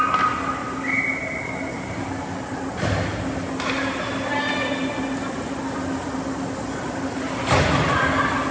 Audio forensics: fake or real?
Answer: real